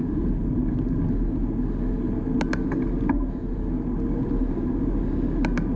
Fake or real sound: real